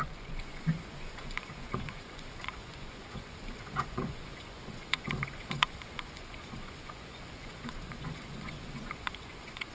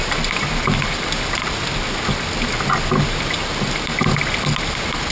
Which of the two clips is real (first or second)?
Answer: second